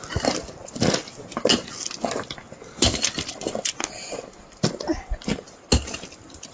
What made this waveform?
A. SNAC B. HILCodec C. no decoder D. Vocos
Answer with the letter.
C